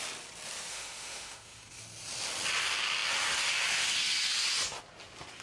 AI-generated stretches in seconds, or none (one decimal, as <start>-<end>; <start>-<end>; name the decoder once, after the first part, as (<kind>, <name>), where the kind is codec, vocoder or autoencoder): 0.7-1.8 (autoencoder, DAC-VAE)